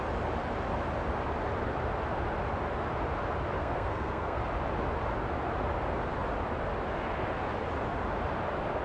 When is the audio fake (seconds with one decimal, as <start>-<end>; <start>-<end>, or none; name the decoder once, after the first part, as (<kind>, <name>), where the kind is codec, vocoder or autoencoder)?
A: 3.6-4.4 (codec, SNAC)